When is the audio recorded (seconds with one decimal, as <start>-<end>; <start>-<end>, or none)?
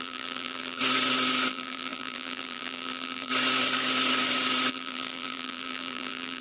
0.8-1.5; 3.3-4.7